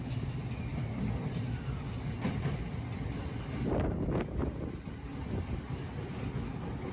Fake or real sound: real